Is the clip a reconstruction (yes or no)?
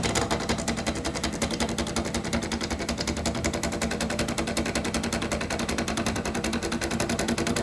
no